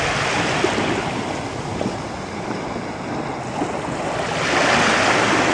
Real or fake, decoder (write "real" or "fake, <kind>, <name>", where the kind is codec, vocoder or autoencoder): real